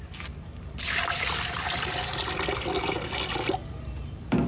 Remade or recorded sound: recorded